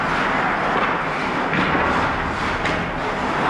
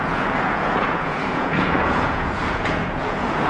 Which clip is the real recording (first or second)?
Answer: first